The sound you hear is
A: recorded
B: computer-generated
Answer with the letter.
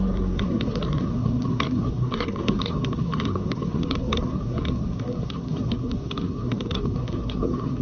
B